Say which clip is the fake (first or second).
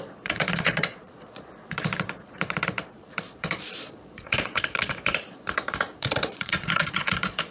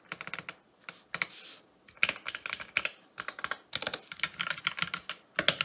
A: first